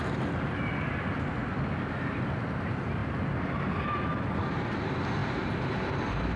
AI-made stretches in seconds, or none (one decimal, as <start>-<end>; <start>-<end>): none

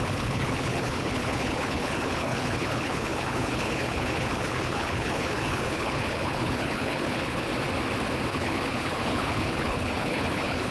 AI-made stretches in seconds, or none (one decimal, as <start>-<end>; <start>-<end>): 0.0-7.5; 8.3-10.7